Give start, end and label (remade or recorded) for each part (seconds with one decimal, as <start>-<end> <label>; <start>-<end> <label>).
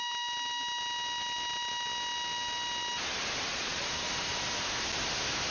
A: 0.0-3.5 recorded; 3.5-4.1 remade; 4.1-5.5 recorded